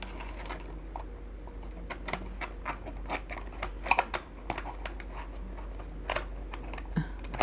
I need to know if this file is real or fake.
real